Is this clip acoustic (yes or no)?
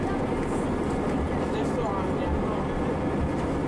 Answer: yes